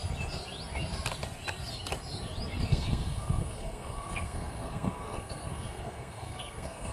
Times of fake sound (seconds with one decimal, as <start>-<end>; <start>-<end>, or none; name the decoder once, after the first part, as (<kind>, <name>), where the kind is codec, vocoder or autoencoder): 2.7-6.9 (codec, SNAC)